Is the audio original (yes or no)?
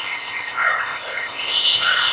no